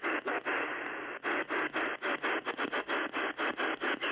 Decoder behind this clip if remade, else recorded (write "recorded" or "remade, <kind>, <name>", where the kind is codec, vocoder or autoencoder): recorded